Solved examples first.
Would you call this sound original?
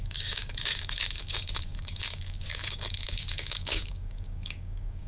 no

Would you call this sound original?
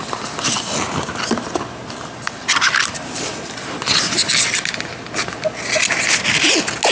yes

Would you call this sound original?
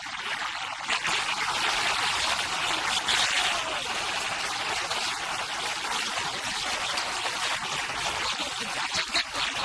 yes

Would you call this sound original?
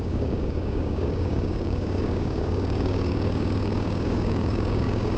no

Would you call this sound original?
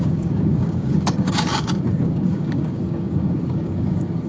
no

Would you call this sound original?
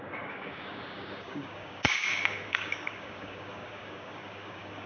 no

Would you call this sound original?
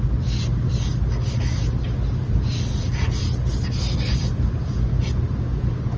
yes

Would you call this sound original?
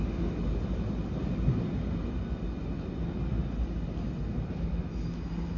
yes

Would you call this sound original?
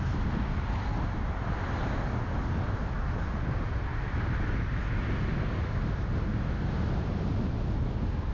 yes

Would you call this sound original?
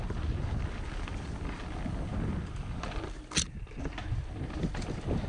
yes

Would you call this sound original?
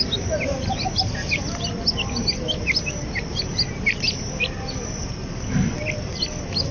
yes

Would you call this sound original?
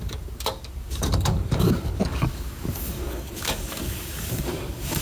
no